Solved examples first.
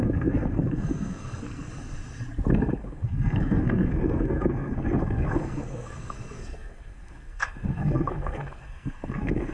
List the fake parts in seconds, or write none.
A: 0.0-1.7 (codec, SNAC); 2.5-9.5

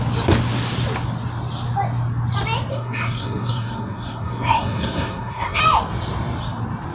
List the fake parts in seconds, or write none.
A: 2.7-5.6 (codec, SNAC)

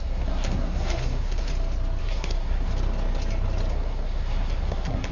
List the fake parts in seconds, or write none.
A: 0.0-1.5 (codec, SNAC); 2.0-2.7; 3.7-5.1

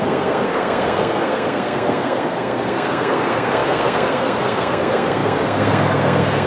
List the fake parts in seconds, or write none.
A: 0.0-6.5 (codec, SNAC)

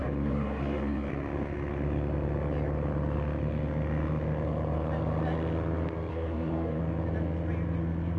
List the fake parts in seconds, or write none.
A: 0.0-1.1 (codec, SNAC); 6.1-6.8